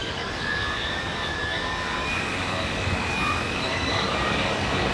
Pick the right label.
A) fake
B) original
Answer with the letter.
A